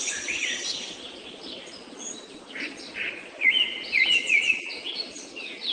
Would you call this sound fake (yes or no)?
yes